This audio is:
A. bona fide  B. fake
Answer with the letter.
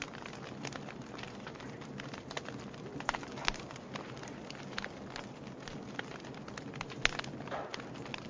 A